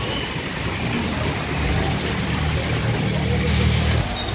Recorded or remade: recorded